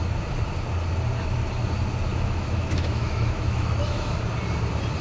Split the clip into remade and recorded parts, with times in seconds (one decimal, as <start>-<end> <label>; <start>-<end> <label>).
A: 0.0-2.1 recorded; 2.1-4.1 remade; 4.1-5.0 recorded